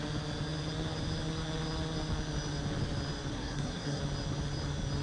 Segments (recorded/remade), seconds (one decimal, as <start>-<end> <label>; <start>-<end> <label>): 0.0-3.3 recorded; 3.3-4.0 remade; 4.0-5.0 recorded